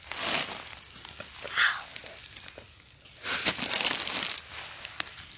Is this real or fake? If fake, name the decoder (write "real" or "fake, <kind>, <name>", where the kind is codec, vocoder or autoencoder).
real